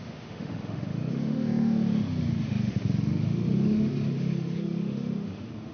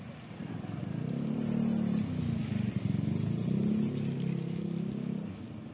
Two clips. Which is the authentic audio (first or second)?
second